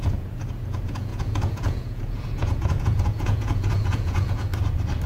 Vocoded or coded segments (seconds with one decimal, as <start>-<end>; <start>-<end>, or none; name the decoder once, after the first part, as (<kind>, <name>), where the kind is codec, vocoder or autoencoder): 0.0-4.5 (vocoder, Vocos)